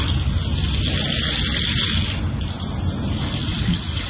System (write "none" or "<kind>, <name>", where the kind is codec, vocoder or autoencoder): none